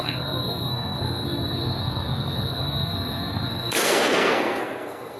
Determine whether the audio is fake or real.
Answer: fake